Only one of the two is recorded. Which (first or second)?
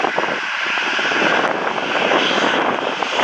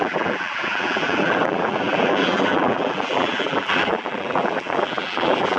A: first